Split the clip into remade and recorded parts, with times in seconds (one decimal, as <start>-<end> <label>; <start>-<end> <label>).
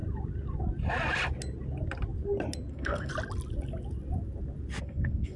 0.0-2.7 recorded; 2.7-3.1 remade; 3.1-4.8 recorded; 4.8-5.4 remade